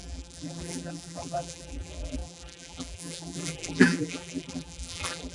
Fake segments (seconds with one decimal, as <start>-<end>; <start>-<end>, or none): 0.0-5.3